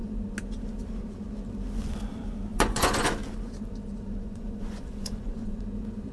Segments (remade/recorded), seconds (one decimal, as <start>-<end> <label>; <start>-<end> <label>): 0.0-2.5 recorded; 2.5-3.1 remade; 3.1-4.2 recorded; 4.2-5.6 remade; 5.6-6.1 recorded